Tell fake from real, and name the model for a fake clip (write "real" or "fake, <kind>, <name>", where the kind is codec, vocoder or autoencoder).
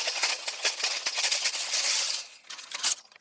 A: fake, vocoder, HiFi-GAN